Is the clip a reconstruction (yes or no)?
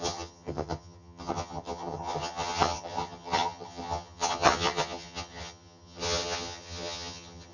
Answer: yes